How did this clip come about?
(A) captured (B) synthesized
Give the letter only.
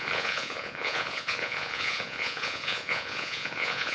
B